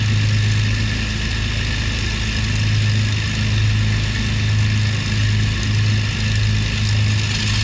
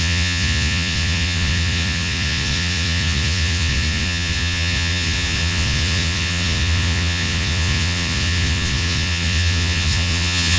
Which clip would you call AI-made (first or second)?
second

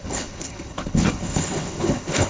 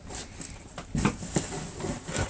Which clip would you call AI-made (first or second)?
first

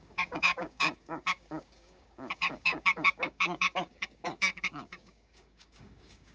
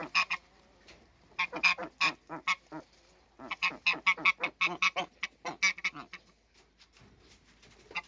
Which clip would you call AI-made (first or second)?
first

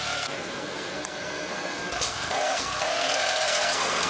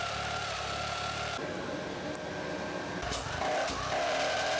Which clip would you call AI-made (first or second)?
first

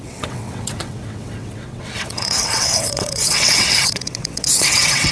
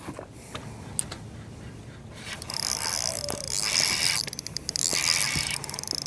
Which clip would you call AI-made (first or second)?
first